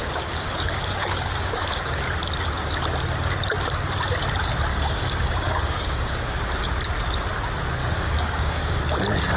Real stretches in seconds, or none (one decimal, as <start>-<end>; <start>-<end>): 2.0-4.7; 6.5-7.8; 8.8-9.4